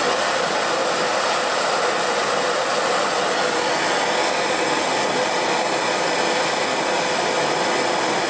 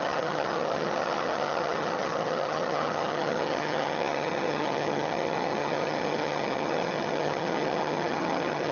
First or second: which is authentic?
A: first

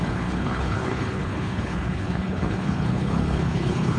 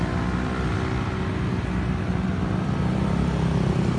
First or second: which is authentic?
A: second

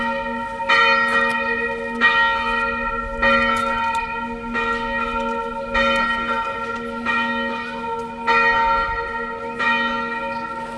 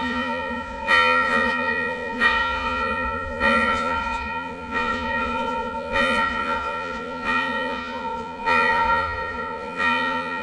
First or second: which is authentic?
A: first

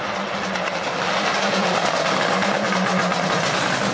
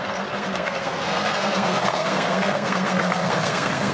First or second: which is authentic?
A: first